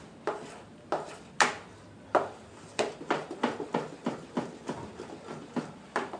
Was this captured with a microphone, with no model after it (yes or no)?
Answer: yes